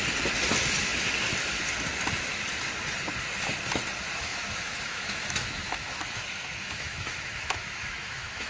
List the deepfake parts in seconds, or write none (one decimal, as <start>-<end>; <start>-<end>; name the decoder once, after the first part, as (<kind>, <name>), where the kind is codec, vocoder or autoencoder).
4.3-8.5 (autoencoder, DAC-VAE)